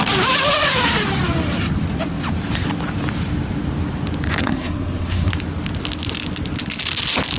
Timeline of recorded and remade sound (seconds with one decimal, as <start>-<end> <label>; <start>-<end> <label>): 0.0-4.4 recorded; 4.4-5.3 remade; 5.3-7.4 recorded